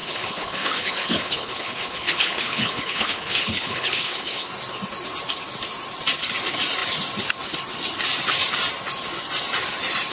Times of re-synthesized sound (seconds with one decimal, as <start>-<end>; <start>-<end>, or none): 0.0-4.5